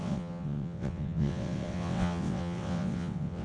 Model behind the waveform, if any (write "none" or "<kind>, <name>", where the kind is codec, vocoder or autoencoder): vocoder, WaveNeXt